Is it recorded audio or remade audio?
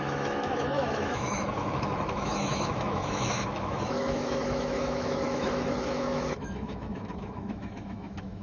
remade